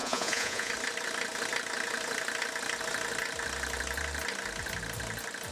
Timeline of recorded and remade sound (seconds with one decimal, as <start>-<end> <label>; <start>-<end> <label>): 0.0-0.7 remade; 0.7-5.5 recorded